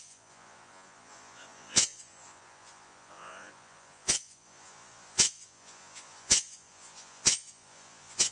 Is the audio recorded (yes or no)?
no